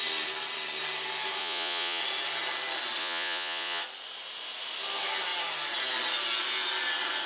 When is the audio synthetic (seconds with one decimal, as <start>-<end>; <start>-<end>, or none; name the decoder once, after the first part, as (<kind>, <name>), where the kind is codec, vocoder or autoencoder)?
1.4-2.0 (vocoder, Vocos); 3.0-3.8